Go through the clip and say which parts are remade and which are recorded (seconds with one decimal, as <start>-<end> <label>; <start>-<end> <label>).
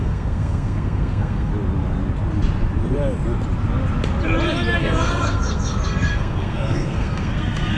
0.0-1.5 remade; 1.5-4.8 recorded; 4.8-7.8 remade